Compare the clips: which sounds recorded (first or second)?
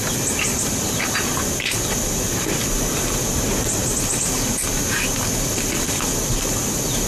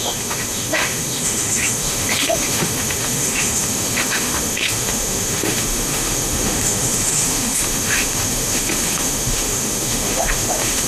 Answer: first